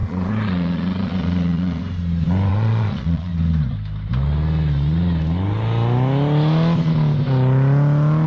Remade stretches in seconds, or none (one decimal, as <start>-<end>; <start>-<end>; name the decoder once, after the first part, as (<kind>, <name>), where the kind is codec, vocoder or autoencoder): 0.0-1.8 (vocoder, Vocos); 2.5-3.3